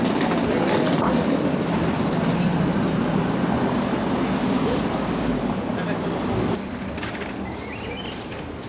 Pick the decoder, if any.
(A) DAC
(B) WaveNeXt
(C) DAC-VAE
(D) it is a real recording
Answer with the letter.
D